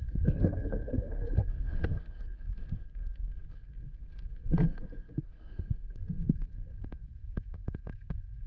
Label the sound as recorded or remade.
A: remade